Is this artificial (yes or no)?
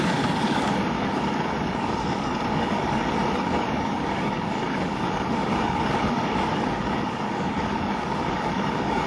yes